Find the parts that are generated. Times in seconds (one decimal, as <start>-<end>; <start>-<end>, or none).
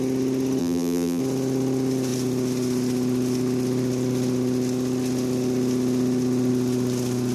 0.6-1.2